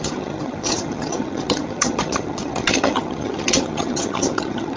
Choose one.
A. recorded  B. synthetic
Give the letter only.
B